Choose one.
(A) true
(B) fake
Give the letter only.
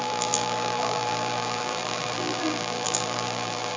B